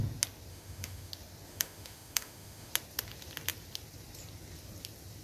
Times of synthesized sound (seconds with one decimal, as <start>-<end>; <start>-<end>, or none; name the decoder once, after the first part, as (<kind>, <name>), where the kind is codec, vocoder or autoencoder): 0.5-1.1 (autoencoder, DAC-VAE); 1.5-2.7